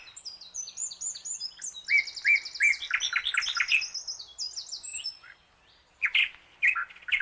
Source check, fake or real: real